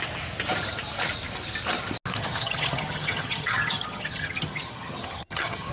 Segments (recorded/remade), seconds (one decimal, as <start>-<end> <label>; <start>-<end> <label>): 0.0-2.2 recorded; 2.2-5.7 remade

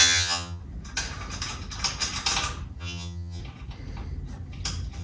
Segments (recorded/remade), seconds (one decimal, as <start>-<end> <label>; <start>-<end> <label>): 0.0-0.6 remade; 0.6-2.8 recorded; 2.8-3.4 remade; 3.4-5.0 recorded

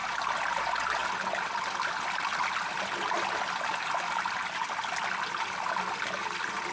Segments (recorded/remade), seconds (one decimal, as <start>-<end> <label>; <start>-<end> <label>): 0.0-6.7 recorded

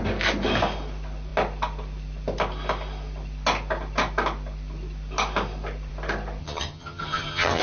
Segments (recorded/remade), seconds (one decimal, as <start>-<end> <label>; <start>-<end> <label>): 0.0-6.4 recorded; 6.4-7.6 remade

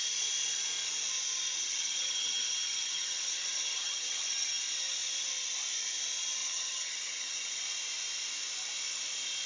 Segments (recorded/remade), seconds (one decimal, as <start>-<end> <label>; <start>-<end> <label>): 0.0-1.6 recorded; 1.6-4.6 remade; 4.6-6.4 recorded; 6.4-7.6 remade; 7.6-9.5 recorded